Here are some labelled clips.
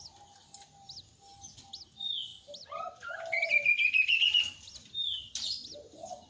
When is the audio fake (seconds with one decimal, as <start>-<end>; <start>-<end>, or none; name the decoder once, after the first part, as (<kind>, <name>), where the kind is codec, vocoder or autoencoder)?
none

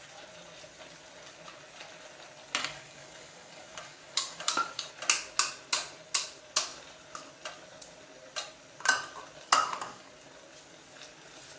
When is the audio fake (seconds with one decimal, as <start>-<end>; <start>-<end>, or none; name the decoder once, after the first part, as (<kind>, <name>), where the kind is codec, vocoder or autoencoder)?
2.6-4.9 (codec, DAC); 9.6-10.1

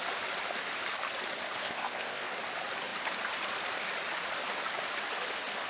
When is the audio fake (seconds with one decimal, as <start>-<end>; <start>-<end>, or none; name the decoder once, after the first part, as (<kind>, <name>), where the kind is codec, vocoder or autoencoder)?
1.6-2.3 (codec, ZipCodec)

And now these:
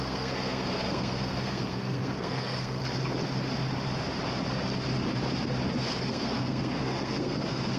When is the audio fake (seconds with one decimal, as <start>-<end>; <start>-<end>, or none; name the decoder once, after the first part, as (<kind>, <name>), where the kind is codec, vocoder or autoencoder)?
0.0-2.8 (codec, SNAC); 6.0-7.8

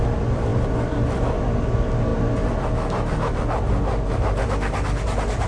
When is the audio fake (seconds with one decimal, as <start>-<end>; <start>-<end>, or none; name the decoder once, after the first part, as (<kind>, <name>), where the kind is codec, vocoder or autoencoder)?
none

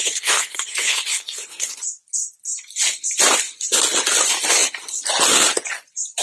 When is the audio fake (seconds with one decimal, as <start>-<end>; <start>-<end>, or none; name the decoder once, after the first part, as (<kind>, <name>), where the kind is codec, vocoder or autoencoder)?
0.0-1.8 (codec, HILCodec)

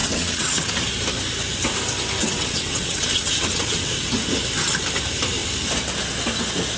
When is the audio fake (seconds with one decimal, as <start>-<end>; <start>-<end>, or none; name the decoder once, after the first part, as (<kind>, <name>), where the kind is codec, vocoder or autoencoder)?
0.0-0.7 (vocoder, WaveNeXt); 2.2-3.9

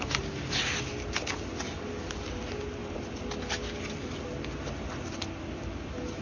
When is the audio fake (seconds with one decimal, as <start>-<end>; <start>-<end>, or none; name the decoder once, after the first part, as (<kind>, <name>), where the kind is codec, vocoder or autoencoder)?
none